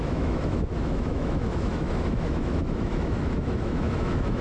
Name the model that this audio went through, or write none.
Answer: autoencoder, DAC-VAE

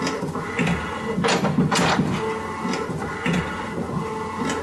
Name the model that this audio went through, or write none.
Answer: none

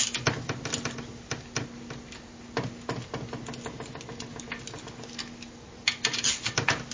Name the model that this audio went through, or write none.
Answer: none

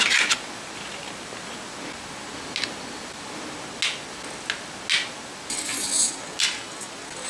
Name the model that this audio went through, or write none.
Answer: none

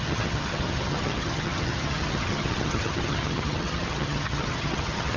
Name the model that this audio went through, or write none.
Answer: vocoder, HiFi-GAN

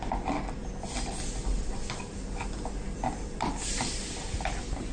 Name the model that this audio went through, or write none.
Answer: none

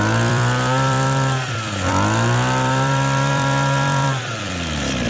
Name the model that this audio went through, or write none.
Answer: vocoder, BigVGAN v2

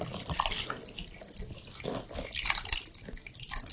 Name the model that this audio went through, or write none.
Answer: none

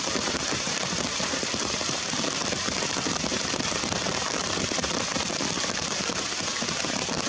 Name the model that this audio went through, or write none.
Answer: vocoder, BigVGAN v2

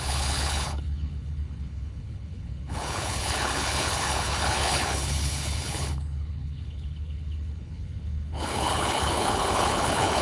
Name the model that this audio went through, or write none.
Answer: codec, HILCodec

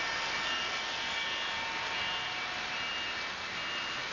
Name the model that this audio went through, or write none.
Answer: none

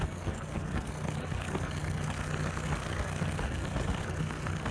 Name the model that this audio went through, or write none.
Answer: codec, SNAC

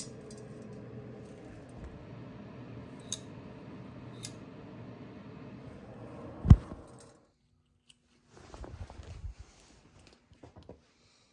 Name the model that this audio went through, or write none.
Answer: none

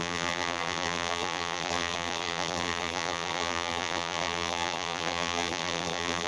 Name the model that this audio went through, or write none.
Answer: vocoder, BigVGAN v2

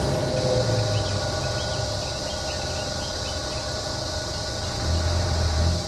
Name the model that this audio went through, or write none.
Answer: none